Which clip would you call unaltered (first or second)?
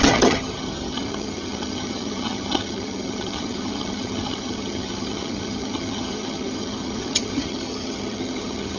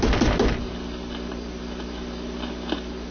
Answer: second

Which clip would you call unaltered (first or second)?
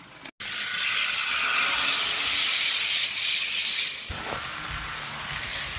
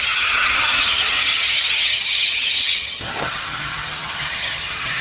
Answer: first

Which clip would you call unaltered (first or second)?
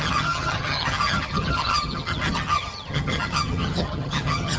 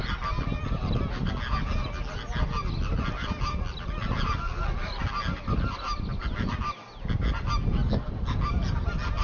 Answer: second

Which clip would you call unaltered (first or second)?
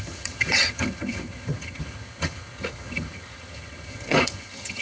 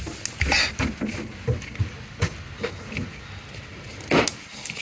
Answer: second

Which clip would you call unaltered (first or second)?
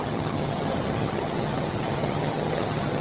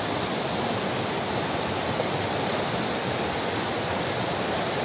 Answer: second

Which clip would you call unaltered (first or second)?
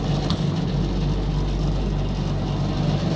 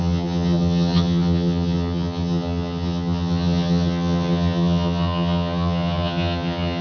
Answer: first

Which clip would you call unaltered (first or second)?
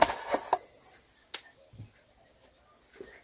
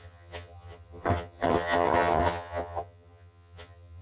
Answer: first